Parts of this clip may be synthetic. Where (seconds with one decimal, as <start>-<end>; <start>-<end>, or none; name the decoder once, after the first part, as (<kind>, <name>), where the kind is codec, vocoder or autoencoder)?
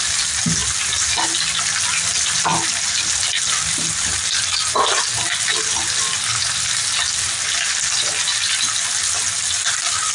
none